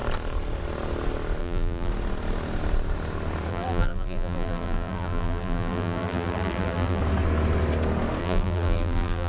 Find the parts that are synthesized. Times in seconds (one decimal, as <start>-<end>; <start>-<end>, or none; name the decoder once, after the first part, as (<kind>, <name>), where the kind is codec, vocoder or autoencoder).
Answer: 1.4-1.9 (vocoder, BigVGAN v2); 3.5-7.0; 8.2-9.3